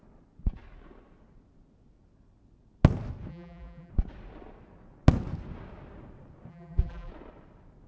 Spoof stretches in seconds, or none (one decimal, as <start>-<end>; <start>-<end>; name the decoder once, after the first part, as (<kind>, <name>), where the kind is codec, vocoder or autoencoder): 3.3-3.9 (vocoder, BigVGAN v2); 6.5-7.1